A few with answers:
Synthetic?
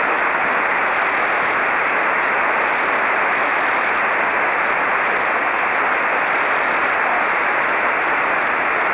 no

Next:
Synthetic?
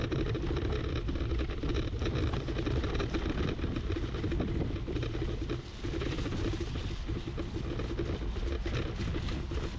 no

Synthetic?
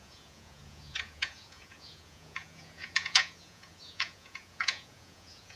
yes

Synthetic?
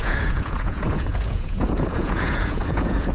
yes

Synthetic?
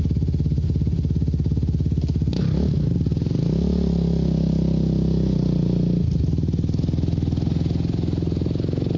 no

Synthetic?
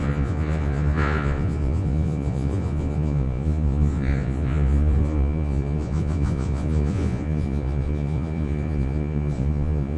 yes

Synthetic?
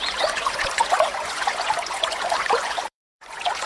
yes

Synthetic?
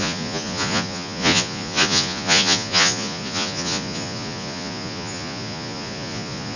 yes